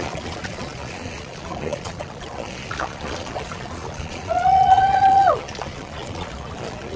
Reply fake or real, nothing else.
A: fake